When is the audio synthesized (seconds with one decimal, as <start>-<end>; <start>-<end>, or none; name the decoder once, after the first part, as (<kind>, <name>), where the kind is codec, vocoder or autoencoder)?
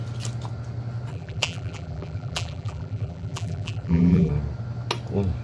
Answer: 1.1-4.3 (vocoder, BigVGAN v2)